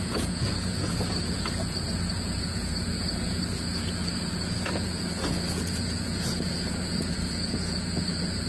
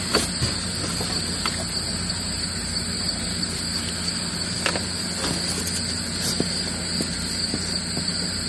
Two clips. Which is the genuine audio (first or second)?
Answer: second